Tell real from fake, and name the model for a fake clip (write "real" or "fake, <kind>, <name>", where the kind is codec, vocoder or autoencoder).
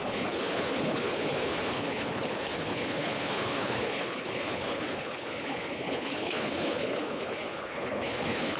fake, codec, HILCodec